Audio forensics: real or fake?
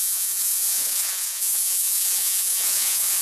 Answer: fake